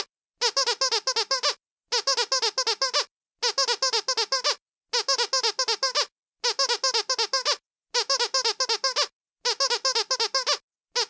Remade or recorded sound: recorded